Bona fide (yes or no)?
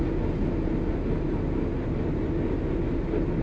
yes